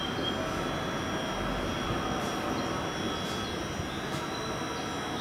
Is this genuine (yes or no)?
yes